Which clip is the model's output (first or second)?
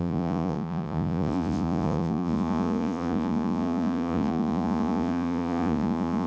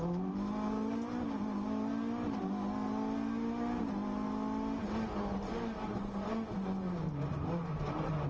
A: first